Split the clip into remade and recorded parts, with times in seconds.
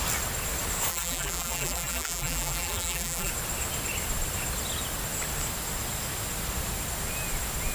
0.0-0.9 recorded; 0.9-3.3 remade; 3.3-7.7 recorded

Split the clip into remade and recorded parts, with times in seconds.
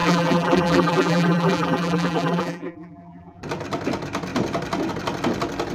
0.0-3.4 remade; 3.4-5.7 recorded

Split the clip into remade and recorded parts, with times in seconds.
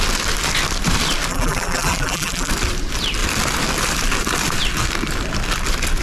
0.0-1.3 recorded; 1.3-2.5 remade; 2.5-6.0 recorded